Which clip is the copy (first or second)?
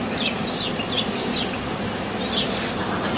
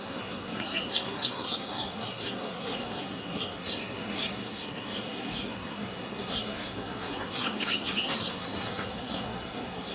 second